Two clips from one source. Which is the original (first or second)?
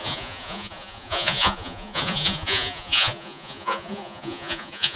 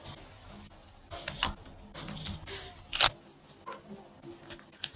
second